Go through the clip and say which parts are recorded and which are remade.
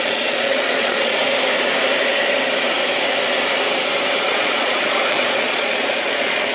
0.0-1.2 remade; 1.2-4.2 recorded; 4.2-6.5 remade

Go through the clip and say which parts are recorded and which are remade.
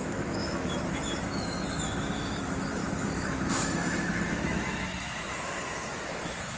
0.0-6.6 remade